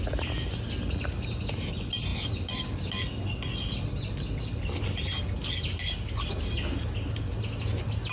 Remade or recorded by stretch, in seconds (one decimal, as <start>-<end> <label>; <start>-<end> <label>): 0.0-8.1 recorded